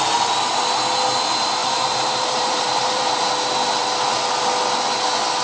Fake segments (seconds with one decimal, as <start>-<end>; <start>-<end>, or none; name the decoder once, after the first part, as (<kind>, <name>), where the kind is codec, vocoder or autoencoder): 1.6-3.0 (vocoder, BigVGAN v2)